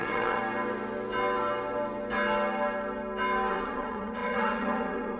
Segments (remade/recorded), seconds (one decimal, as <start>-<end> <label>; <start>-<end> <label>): 0.0-0.4 remade; 0.4-3.5 recorded; 3.5-5.2 remade